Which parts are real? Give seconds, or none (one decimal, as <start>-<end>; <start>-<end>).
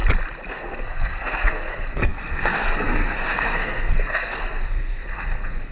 0.0-0.5